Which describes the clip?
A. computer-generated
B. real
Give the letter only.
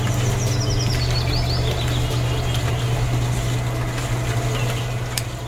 B